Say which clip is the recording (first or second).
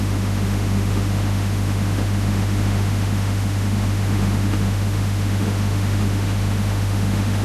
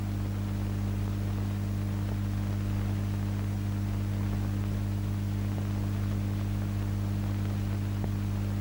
second